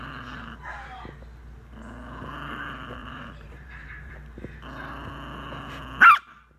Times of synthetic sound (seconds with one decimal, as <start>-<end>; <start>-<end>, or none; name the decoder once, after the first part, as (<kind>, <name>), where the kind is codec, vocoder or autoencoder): 3.0-4.1 (vocoder, BigVGAN v2)